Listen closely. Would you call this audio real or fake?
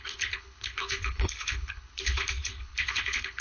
fake